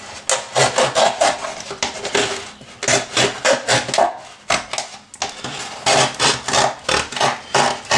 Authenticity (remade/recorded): recorded